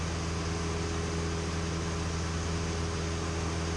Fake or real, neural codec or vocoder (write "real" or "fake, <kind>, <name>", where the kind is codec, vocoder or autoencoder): real